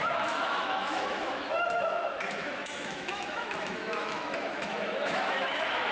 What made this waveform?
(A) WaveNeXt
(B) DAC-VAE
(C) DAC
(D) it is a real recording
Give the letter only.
B